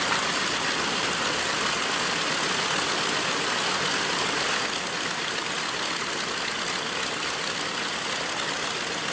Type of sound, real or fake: real